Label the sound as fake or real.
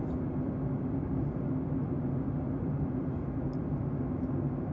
real